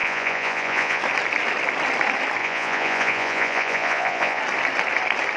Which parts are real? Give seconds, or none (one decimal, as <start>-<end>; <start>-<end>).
1.0-2.4; 4.4-5.4